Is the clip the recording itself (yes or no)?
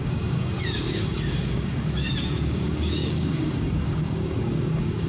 no